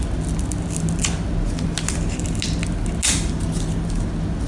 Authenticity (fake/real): real